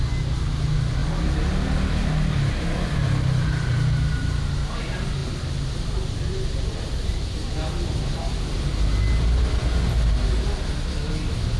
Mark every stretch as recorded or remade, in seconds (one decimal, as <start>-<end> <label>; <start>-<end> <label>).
0.0-11.6 recorded